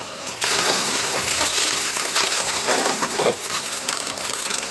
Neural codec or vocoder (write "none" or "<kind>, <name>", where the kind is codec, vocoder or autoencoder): codec, SNAC